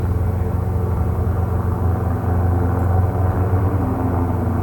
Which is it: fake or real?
real